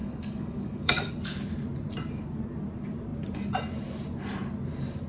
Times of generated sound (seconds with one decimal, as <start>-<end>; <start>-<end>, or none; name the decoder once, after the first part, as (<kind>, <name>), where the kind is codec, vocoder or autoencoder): 0.0-1.1 (codec, DAC)